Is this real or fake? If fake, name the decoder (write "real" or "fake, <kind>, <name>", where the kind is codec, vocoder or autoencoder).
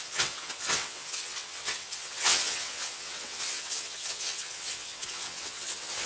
fake, vocoder, WaveNeXt